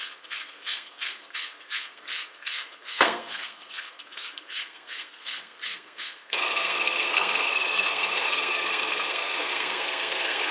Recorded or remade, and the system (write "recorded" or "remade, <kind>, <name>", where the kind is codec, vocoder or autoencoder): remade, codec, SNAC